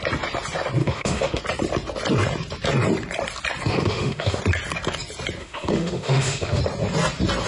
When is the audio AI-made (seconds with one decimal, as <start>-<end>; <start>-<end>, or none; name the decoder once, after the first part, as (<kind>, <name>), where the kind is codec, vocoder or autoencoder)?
0.8-1.4 (autoencoder, DAC-VAE); 3.7-4.4; 5.4-6.6

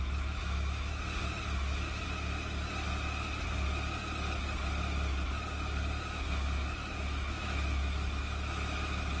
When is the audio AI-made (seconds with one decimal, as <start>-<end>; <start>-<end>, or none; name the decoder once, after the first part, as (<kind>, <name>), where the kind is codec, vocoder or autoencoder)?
0.0-0.9 (autoencoder, DAC-VAE); 6.1-9.2

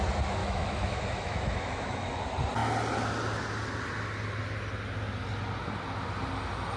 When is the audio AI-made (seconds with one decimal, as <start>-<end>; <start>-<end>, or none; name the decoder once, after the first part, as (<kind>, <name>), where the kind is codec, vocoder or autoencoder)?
0.4-2.2 (autoencoder, DAC-VAE)

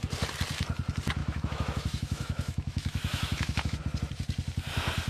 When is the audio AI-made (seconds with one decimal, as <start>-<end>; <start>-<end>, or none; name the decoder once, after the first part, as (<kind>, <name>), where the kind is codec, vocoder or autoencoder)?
1.2-3.8 (autoencoder, DAC-VAE)

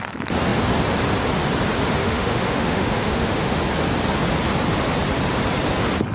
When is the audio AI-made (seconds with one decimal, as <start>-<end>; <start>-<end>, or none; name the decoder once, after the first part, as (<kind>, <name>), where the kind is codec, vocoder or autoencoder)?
2.0-3.6 (autoencoder, DAC-VAE)